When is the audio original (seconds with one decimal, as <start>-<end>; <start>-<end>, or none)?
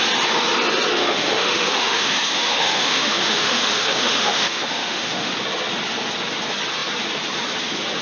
0.0-0.9; 5.3-8.0